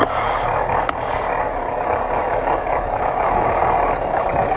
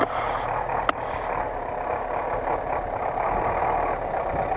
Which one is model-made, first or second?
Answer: first